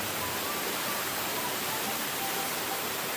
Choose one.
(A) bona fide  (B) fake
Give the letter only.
B